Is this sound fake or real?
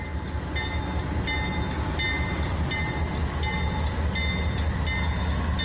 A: real